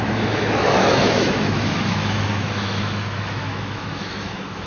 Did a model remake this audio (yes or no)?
yes